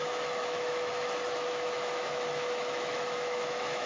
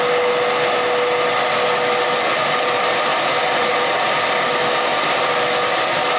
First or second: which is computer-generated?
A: first